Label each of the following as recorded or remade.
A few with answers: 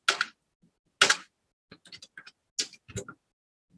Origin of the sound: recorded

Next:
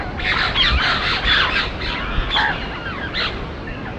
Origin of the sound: recorded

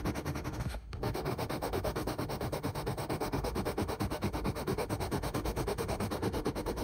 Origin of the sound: remade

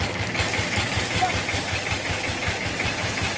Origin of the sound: recorded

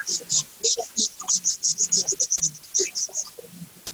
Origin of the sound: recorded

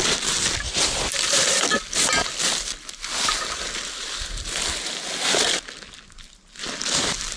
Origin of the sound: recorded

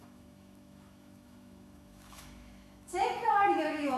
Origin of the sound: remade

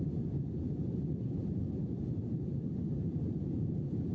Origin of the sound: recorded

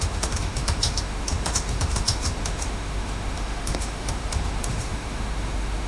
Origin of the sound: remade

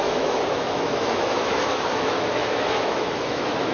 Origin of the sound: remade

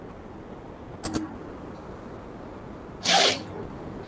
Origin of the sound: recorded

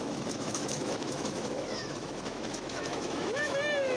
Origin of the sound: remade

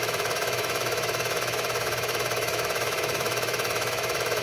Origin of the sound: remade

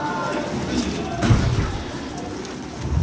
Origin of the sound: recorded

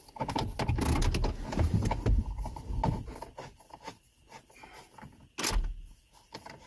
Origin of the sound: recorded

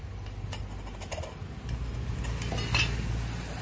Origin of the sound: recorded